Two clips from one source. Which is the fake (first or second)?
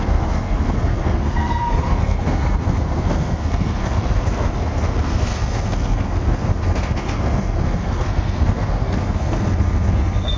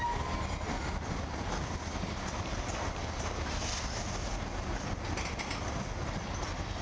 first